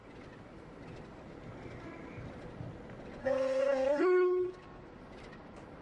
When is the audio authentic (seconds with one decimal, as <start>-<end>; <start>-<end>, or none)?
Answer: 0.0-3.2; 4.5-5.8